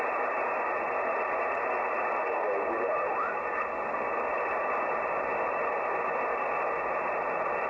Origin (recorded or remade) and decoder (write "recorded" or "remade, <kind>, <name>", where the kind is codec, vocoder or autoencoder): recorded